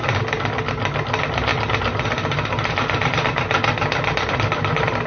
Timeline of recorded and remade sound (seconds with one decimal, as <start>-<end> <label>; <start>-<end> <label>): 0.0-5.1 recorded